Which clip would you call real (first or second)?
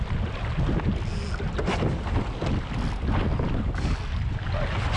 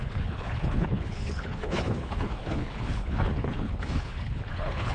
first